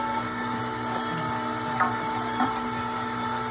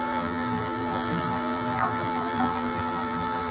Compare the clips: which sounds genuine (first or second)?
first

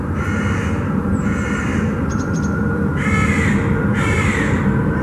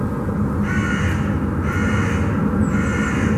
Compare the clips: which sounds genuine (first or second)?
second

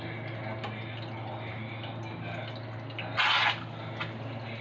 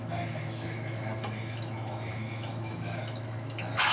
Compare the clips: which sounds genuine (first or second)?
first